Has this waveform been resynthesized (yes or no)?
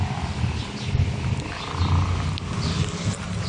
no